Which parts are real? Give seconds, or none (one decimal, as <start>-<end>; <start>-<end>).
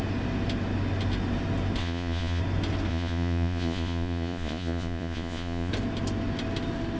0.0-1.8; 2.4-2.9; 5.7-7.0